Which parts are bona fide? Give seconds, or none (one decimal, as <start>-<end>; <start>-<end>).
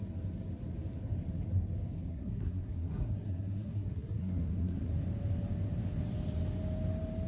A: 0.0-2.1; 4.9-7.3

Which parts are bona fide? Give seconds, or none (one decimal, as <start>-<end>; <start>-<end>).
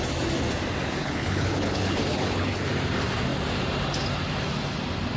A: 0.0-1.0; 2.7-5.2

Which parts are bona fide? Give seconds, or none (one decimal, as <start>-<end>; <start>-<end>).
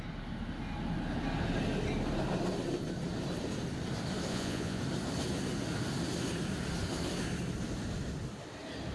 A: 0.0-4.3; 4.8-8.9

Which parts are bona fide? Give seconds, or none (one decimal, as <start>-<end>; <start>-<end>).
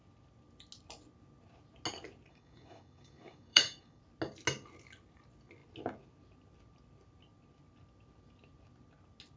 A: 0.0-2.3; 4.0-9.4